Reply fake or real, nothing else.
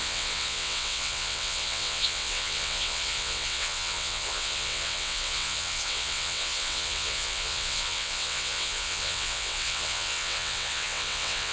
fake